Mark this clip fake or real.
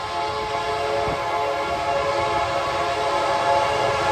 real